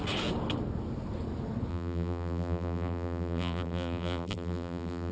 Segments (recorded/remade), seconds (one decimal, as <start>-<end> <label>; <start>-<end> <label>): 0.0-1.7 recorded; 1.7-5.1 remade